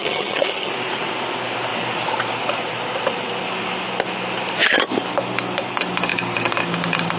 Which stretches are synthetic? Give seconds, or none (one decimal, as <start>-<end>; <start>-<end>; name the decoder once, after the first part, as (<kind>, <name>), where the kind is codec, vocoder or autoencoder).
0.0-0.7 (vocoder, HiFi-GAN)